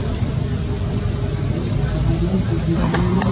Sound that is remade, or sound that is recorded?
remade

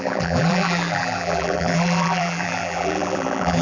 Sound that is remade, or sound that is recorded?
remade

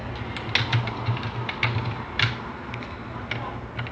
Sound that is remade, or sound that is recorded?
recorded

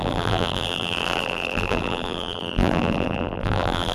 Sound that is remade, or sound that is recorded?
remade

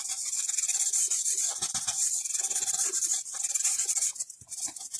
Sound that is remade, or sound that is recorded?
remade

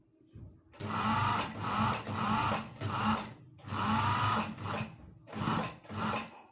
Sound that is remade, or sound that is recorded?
recorded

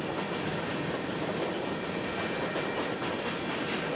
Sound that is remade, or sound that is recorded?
remade